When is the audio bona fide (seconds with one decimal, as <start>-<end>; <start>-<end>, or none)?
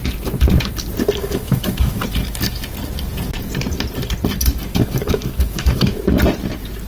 0.0-1.2; 2.0-4.7; 6.0-6.9